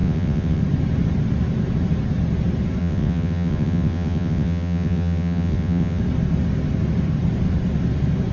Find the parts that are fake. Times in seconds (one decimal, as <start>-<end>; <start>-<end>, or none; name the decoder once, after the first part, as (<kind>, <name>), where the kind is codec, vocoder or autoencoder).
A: 0.0-0.6 (vocoder, WaveNeXt); 2.8-6.0